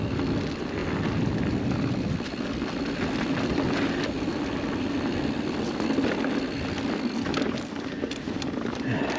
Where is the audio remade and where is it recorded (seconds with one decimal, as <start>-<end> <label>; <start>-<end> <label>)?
0.0-9.2 recorded